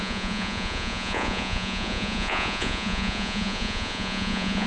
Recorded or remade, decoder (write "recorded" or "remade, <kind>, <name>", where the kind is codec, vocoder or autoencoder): remade, vocoder, Vocos